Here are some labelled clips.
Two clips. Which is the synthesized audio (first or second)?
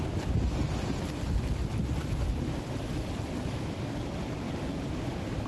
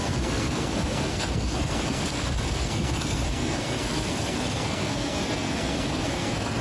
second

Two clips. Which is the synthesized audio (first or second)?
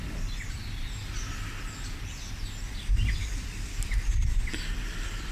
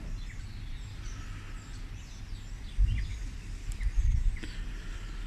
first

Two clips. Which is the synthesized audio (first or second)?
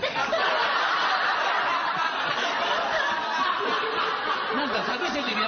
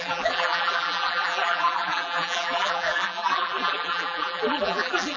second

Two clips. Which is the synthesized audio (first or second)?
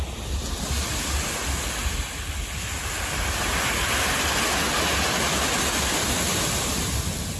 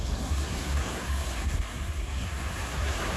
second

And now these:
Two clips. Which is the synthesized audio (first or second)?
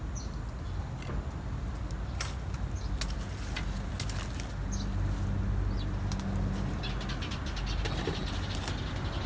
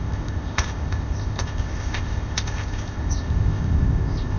second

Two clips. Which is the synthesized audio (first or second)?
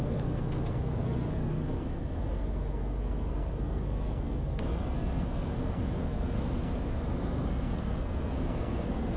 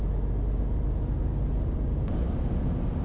first